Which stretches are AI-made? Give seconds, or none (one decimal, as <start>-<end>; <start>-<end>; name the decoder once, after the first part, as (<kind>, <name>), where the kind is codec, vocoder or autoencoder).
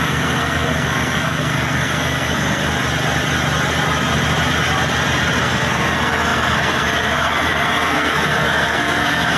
0.0-2.6 (codec, SNAC); 5.4-9.4